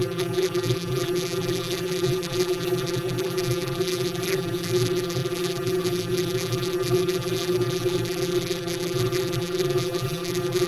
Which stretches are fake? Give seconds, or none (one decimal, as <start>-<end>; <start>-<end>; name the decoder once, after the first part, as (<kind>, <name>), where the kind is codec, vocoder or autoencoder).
0.0-10.7 (vocoder, BigVGAN v2)